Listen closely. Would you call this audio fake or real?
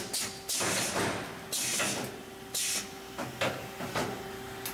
real